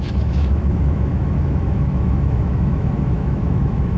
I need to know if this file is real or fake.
fake